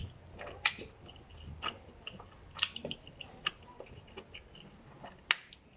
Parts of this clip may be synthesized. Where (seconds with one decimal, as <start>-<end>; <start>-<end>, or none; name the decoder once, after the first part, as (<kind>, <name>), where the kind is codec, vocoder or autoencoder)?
none

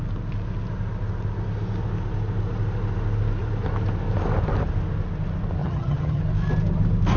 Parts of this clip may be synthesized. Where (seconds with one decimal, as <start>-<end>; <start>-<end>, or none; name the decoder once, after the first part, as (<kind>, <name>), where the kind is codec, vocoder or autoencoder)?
5.6-6.2 (vocoder, HiFi-GAN)

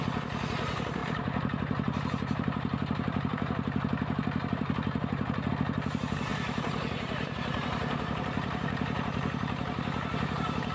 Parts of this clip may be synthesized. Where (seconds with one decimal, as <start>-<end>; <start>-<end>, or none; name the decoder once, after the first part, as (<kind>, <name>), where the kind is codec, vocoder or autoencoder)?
1.0-5.5 (vocoder, BigVGAN v2); 6.3-10.7

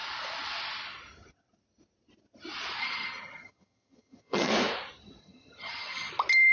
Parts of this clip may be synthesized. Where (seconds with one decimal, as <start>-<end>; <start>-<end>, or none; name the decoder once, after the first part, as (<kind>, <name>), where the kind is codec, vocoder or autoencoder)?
2.8-4.5 (vocoder, HiFi-GAN); 5.2-6.1